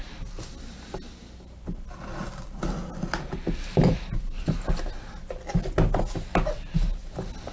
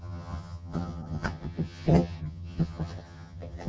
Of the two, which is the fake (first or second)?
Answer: second